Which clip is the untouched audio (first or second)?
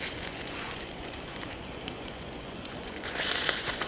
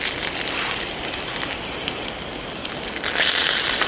second